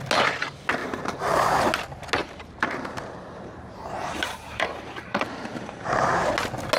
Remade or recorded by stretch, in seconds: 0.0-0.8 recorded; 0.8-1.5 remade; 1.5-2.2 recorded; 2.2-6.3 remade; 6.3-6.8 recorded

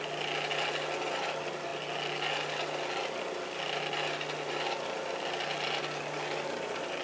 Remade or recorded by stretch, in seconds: 0.0-7.0 recorded

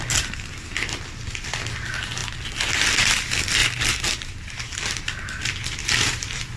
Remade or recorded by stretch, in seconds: 0.0-3.6 recorded; 3.6-4.9 remade; 4.9-5.8 recorded; 5.8-6.6 remade